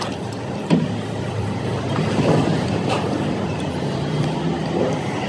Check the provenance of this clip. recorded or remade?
remade